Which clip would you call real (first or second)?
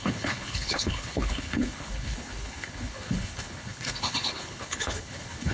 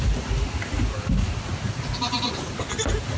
second